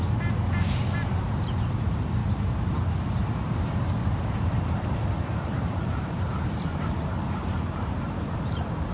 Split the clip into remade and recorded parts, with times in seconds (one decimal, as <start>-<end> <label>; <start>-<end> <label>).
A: 0.0-2.2 recorded; 2.2-2.7 remade; 2.7-4.0 recorded; 4.0-8.9 remade